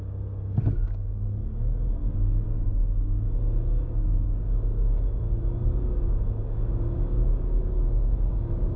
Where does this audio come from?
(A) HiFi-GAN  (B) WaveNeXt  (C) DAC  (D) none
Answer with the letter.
C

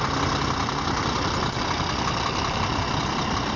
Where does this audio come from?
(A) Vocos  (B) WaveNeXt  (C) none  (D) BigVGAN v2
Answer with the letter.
C